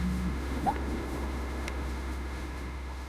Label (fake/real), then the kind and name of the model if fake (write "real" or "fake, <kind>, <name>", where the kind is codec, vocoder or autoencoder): fake, autoencoder, DAC-VAE